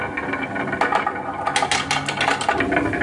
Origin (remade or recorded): recorded